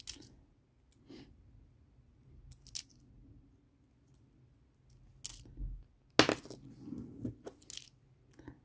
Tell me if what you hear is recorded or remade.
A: recorded